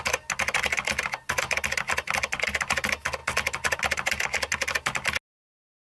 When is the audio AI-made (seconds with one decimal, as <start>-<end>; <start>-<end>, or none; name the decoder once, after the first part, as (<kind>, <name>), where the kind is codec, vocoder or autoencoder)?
none